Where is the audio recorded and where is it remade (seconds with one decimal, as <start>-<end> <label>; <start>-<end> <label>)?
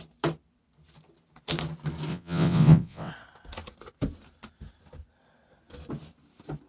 0.0-2.1 recorded; 2.1-3.1 remade; 3.1-6.7 recorded